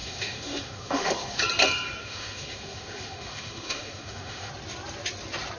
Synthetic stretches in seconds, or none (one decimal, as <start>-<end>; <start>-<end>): 0.0-1.4; 2.0-4.5